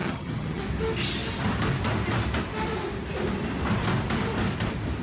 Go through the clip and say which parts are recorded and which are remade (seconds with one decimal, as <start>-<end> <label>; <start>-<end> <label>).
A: 0.0-0.6 remade; 0.6-5.0 recorded